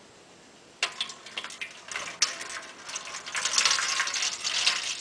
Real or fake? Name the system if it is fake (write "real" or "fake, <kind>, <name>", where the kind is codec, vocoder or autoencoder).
real